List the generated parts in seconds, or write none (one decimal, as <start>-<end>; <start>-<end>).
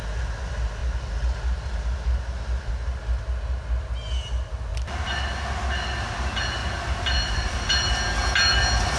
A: 4.7-5.2; 6.6-7.7